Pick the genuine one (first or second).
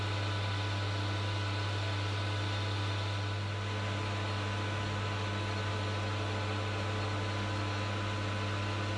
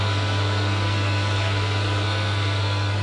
first